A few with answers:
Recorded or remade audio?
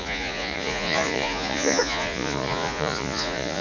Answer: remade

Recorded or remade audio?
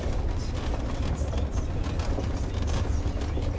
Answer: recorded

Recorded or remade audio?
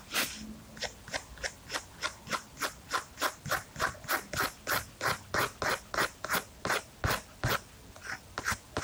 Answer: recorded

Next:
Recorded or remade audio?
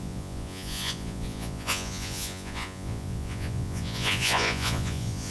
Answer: remade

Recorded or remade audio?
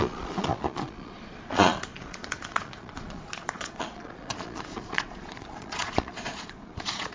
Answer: remade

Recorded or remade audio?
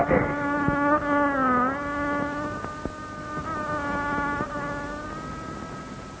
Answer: recorded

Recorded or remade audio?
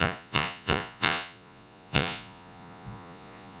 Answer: remade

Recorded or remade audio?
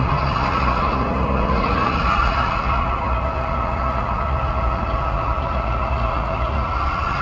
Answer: remade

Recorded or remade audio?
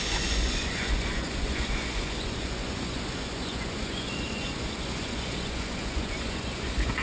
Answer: remade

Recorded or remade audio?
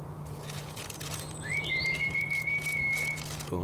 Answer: remade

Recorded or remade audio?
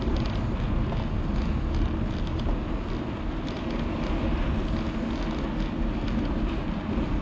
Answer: recorded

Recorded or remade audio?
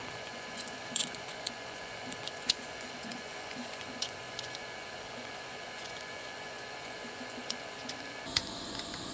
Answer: remade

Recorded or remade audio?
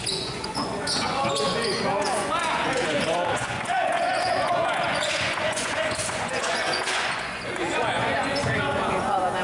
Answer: remade